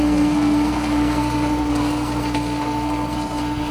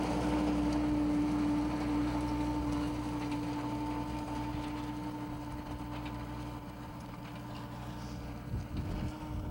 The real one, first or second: second